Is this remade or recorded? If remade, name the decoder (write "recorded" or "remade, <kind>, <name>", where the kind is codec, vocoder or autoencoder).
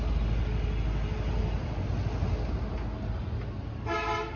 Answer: recorded